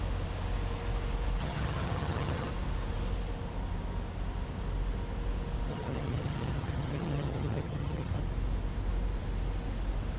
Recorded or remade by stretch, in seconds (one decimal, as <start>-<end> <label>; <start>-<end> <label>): 0.0-1.4 recorded; 1.4-2.5 remade; 2.5-5.7 recorded; 5.7-8.2 remade; 8.2-10.2 recorded